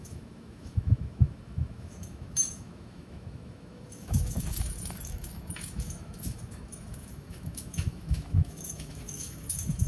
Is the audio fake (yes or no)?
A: yes